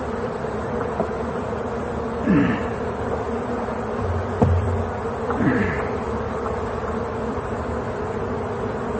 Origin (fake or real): fake